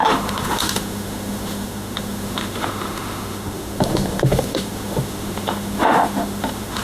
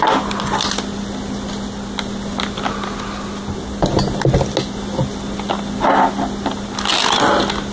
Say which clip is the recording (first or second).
second